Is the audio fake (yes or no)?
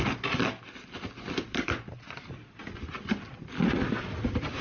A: no